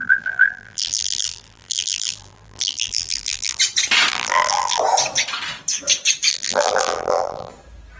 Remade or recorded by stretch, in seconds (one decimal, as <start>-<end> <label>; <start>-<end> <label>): 0.0-3.6 remade; 3.6-4.1 recorded; 4.1-4.8 remade; 4.8-6.3 recorded; 6.3-7.5 remade; 7.5-8.0 recorded